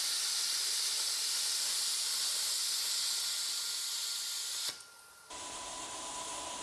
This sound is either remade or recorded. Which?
recorded